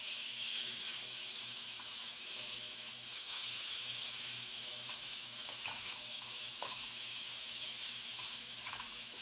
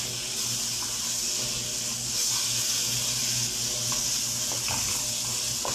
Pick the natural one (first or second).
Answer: second